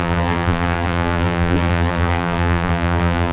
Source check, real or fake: fake